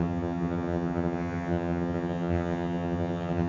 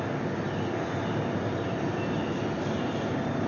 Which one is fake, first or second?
first